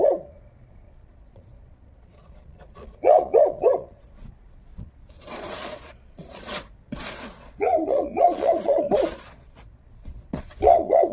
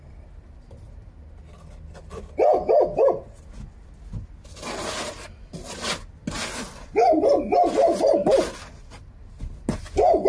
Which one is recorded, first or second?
second